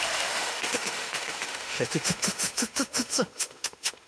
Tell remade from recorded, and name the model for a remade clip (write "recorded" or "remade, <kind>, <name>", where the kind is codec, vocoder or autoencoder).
remade, autoencoder, DAC-VAE